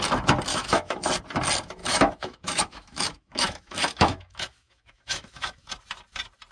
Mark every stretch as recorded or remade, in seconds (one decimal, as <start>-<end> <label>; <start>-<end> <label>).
0.0-0.5 recorded; 0.5-1.1 remade; 1.1-1.8 recorded; 1.8-5.7 remade; 5.7-6.5 recorded